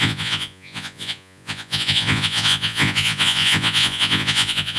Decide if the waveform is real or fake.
fake